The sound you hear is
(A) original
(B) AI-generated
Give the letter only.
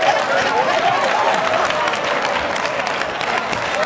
A